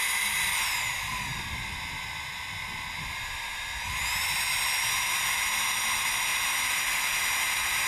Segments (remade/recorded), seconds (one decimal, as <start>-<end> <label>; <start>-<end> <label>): 0.0-7.9 recorded